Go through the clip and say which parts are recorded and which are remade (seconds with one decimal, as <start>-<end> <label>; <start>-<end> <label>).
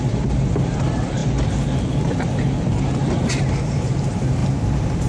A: 0.0-1.2 recorded; 1.2-3.4 remade; 3.4-4.4 recorded; 4.4-5.1 remade